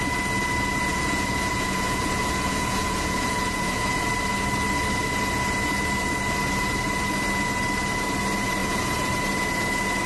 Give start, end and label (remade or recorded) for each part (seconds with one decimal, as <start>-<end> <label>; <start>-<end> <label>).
0.0-0.9 recorded; 0.9-4.1 remade; 4.1-8.6 recorded; 8.6-9.1 remade; 9.1-10.1 recorded